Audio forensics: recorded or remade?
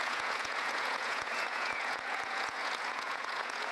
remade